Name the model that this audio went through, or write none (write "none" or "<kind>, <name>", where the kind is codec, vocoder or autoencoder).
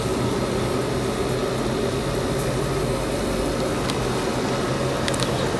none